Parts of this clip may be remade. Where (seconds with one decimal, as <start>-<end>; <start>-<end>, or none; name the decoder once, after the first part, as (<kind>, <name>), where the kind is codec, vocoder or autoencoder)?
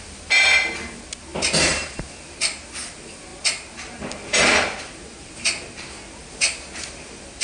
none